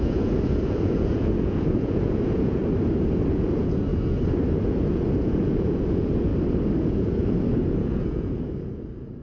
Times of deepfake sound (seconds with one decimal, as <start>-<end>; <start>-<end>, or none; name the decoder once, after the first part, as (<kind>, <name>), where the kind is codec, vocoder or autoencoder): 0.0-2.6 (vocoder, Vocos); 3.3-3.9; 4.6-6.3; 6.8-9.2